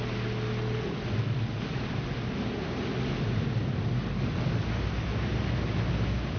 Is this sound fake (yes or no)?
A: no